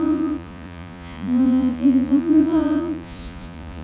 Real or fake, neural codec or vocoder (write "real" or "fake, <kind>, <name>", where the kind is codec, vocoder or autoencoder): fake, vocoder, Vocos